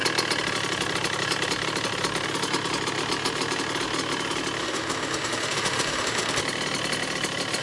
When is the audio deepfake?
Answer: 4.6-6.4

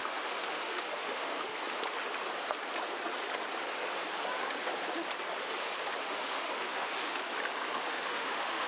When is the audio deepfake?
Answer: 0.0-1.5; 6.0-7.2; 7.7-8.7